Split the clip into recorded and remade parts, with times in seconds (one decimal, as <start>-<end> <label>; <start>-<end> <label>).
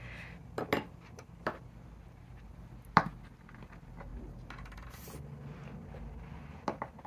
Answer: 0.0-7.1 recorded